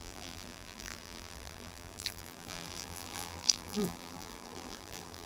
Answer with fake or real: fake